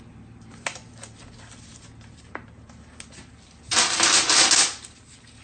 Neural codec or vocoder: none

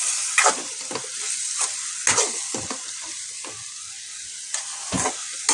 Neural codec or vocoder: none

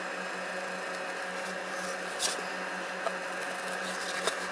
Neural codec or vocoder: none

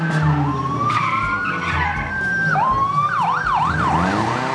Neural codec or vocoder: none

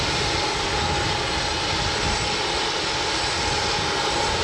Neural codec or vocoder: none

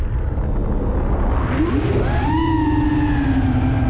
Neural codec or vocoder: none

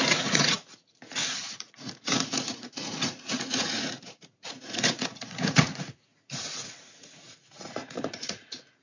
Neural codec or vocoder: vocoder, Vocos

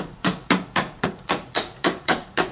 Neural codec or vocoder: vocoder, Vocos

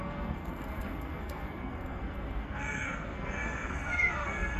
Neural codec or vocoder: codec, SNAC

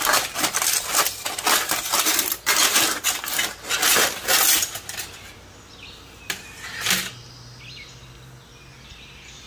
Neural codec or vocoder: none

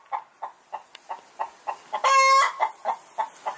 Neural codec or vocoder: none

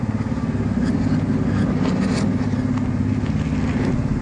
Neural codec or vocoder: none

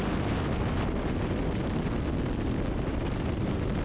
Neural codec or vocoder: none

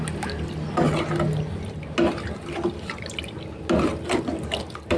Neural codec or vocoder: none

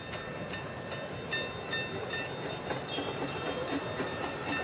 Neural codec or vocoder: none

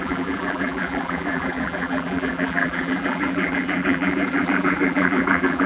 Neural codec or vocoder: vocoder, BigVGAN v2